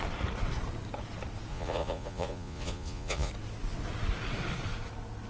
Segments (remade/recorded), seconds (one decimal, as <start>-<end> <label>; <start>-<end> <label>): 0.0-1.5 recorded; 1.5-3.3 remade; 3.3-5.3 recorded